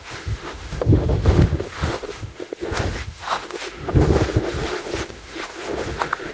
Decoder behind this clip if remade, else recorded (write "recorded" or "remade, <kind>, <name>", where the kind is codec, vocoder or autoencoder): remade, autoencoder, DAC-VAE